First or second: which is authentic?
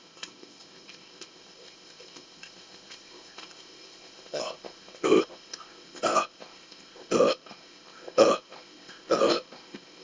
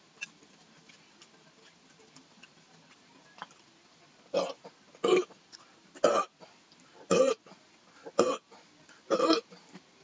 second